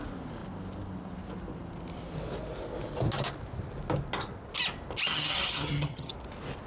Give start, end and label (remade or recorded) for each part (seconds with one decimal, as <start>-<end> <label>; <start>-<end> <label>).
0.0-5.1 recorded; 5.1-6.1 remade; 6.1-6.7 recorded